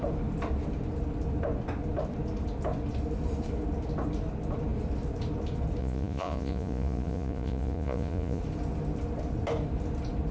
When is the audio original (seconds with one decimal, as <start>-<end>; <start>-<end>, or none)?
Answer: 0.0-5.8; 8.4-10.3